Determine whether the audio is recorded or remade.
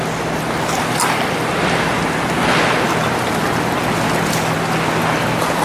recorded